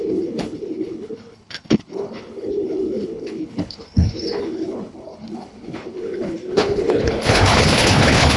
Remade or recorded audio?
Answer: remade